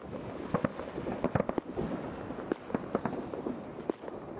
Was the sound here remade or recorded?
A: recorded